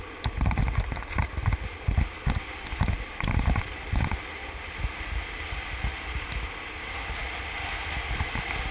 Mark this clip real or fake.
real